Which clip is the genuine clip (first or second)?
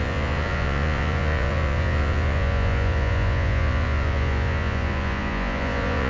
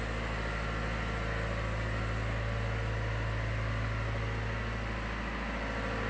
second